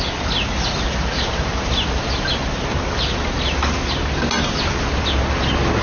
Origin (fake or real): real